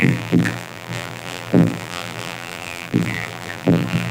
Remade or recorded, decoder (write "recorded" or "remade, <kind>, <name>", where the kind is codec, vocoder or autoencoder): remade, vocoder, BigVGAN v2